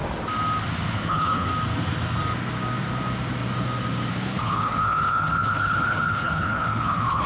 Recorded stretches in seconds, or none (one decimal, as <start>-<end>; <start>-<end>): 0.0-0.9; 1.5-4.1